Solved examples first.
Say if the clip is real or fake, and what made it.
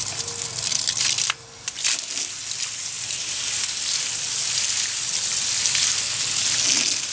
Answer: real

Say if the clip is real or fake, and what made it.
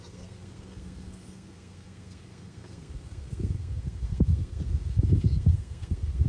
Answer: fake, codec, SNAC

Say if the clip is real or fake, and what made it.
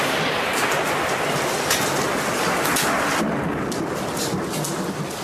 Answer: real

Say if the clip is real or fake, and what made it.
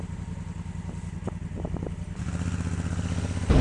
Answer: real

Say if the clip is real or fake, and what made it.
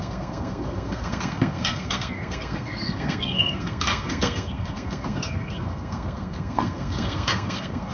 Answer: fake, codec, SNAC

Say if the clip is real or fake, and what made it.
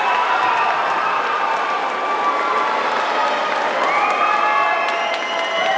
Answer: real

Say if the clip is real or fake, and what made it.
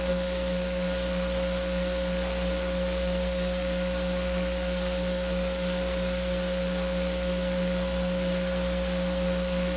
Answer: fake, codec, SNAC